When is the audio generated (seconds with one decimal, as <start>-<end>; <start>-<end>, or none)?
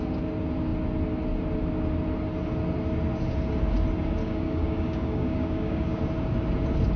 4.2-6.0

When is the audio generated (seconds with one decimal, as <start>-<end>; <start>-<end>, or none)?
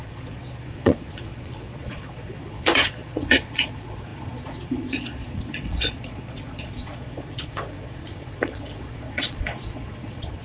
0.0-10.4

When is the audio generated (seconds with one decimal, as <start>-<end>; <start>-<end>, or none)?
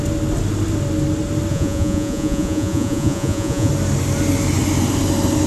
1.5-3.7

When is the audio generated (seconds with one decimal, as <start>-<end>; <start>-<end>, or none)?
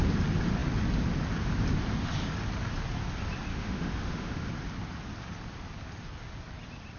3.5-4.5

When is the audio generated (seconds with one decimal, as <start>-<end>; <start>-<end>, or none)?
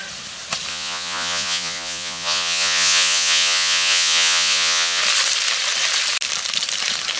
0.7-5.0